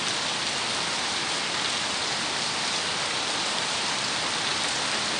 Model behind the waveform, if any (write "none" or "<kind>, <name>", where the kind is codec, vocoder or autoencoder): none